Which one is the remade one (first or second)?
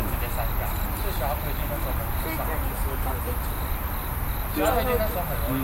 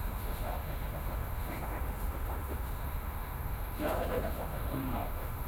second